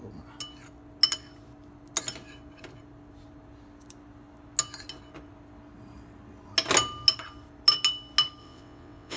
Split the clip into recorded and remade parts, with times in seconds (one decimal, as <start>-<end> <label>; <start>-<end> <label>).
0.0-8.4 recorded; 8.4-9.2 remade